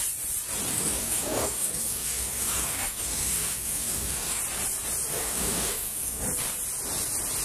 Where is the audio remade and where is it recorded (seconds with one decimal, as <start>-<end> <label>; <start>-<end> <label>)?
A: 0.0-0.7 recorded; 0.7-4.4 remade; 4.4-5.1 recorded; 5.1-6.2 remade; 6.2-7.4 recorded